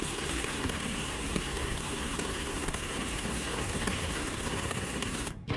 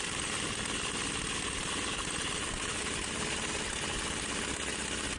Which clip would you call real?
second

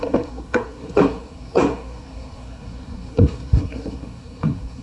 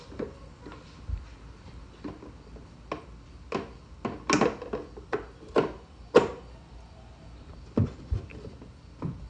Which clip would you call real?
second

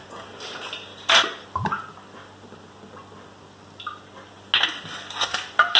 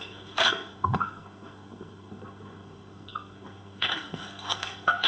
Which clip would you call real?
first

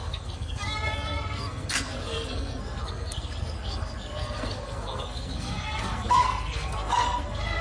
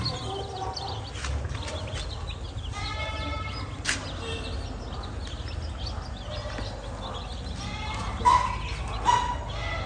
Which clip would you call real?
second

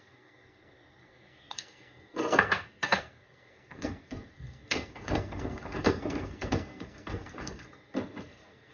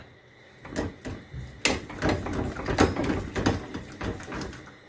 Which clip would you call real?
second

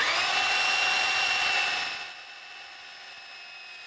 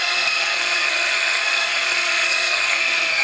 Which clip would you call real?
first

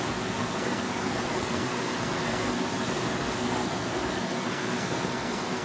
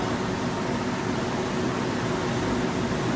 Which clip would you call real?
second